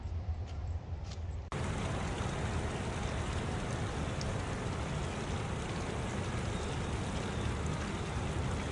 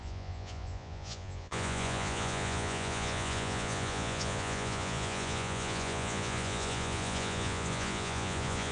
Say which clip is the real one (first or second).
first